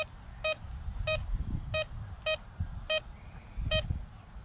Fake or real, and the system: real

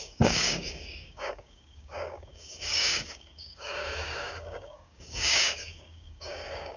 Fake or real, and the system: fake, codec, DAC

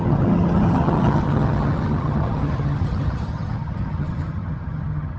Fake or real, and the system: fake, vocoder, HiFi-GAN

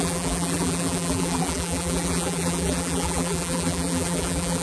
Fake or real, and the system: fake, vocoder, BigVGAN v2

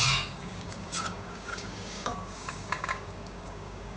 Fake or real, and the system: fake, codec, DAC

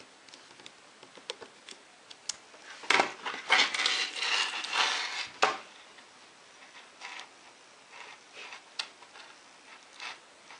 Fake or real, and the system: real